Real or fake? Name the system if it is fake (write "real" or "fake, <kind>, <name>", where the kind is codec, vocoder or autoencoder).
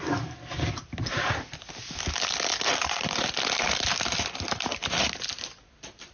real